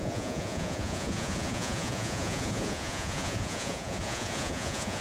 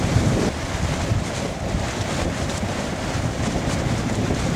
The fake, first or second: first